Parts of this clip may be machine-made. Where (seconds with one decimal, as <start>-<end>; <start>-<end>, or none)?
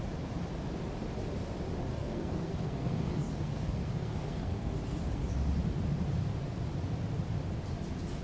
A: 1.9-5.3